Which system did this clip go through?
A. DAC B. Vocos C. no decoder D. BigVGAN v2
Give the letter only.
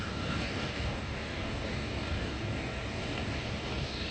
A